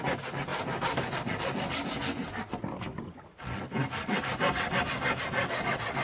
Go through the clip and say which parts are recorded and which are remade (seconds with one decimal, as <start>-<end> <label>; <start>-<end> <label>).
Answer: 0.0-2.9 recorded; 2.9-3.4 remade; 3.4-6.0 recorded